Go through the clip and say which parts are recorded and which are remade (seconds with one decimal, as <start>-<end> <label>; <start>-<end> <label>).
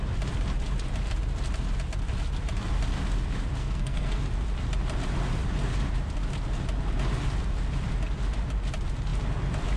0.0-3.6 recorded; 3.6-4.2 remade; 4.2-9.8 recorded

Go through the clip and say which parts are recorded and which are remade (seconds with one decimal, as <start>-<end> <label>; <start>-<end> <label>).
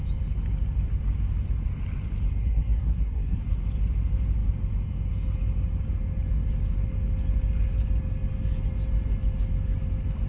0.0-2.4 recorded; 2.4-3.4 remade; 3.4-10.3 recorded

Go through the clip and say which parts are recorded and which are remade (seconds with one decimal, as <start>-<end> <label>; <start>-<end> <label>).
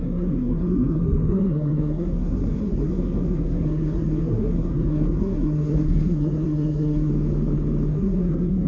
0.0-7.1 remade; 7.1-7.9 recorded; 7.9-8.7 remade